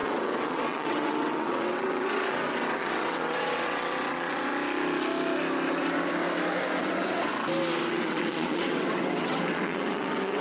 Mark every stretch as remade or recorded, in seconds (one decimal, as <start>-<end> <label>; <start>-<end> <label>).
0.0-4.5 remade; 4.5-6.8 recorded; 6.8-7.3 remade; 7.3-7.9 recorded; 7.9-10.4 remade